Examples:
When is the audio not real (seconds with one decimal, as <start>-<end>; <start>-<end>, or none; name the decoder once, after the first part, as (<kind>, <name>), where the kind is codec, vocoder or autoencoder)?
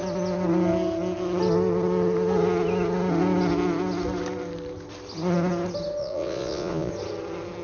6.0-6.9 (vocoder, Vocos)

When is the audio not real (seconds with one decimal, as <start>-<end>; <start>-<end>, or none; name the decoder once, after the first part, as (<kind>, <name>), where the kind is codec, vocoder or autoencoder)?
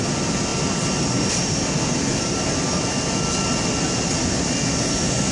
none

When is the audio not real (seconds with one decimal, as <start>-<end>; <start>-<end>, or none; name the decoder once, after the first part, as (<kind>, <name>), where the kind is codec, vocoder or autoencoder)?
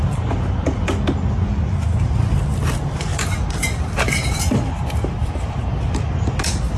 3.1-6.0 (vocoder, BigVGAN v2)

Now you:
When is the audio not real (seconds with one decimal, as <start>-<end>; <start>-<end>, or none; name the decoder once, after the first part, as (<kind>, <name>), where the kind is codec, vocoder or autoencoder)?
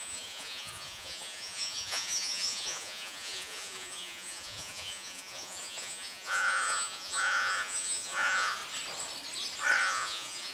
0.0-8.6 (vocoder, Vocos); 9.8-10.5